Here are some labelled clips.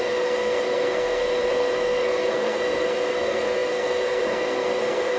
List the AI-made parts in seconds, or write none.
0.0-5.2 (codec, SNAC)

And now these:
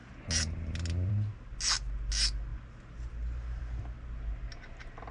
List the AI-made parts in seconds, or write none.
none

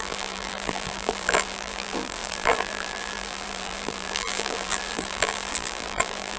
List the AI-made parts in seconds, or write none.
0.0-6.4 (vocoder, BigVGAN v2)